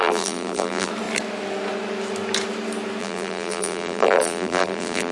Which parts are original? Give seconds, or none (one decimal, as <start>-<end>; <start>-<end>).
0.9-3.0